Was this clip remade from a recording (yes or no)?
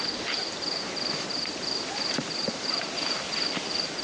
no